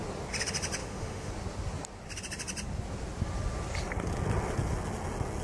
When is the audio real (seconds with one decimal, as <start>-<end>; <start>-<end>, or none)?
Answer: 0.0-0.8; 1.3-5.4